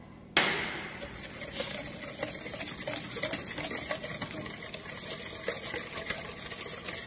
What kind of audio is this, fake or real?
real